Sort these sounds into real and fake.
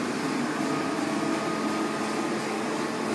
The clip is real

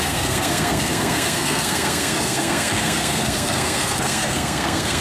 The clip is fake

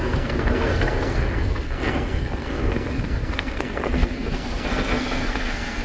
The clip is fake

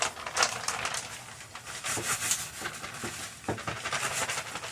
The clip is real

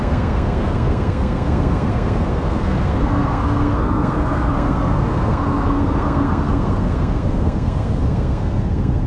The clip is fake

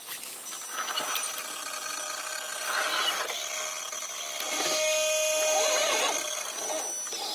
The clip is real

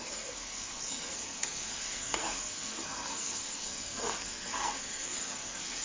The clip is fake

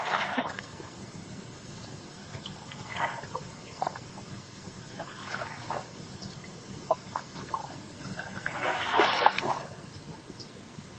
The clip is fake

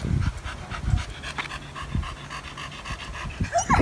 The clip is real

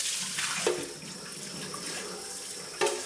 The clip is real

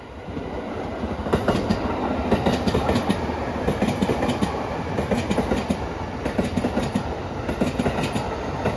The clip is real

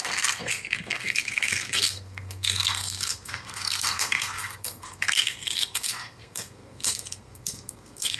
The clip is fake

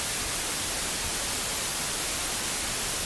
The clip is real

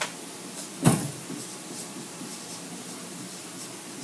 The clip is real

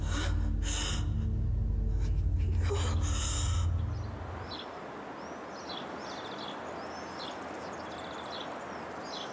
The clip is real